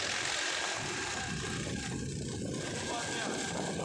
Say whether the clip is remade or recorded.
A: recorded